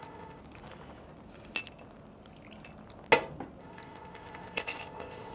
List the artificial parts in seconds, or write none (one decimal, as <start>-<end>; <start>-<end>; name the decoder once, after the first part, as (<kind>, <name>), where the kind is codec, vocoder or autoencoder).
0.0-0.4 (codec, ZipCodec); 3.6-5.3